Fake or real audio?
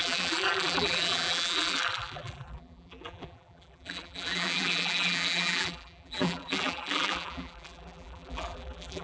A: fake